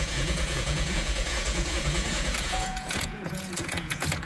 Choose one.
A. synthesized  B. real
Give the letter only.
A